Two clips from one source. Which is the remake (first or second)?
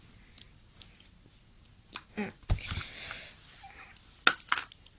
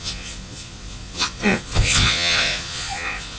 second